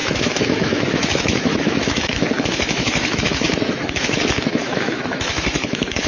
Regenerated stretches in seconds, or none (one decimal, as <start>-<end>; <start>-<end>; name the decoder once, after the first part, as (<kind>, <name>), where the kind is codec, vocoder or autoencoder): 0.0-6.1 (autoencoder, DAC-VAE)